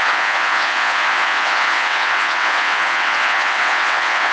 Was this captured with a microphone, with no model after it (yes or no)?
no